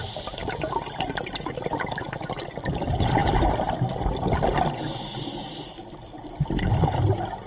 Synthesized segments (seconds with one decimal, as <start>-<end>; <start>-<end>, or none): none